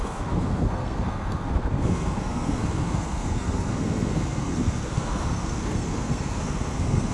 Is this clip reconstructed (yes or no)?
yes